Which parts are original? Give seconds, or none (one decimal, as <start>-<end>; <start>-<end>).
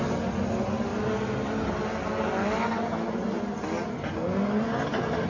0.0-5.3